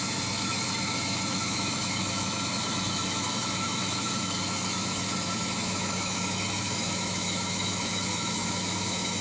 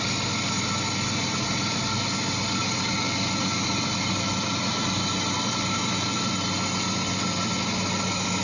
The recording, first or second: second